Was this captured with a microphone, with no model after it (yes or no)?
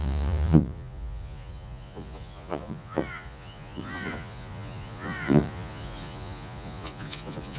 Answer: no